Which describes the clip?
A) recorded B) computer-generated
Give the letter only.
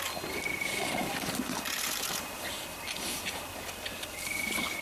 A